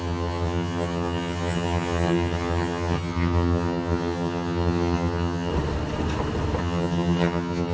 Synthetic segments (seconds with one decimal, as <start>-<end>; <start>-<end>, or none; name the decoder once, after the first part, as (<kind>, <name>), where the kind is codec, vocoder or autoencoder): 0.0-5.5 (vocoder, HiFi-GAN); 6.6-7.7